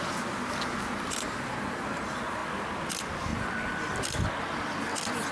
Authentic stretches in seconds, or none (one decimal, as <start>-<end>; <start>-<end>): 0.0-5.3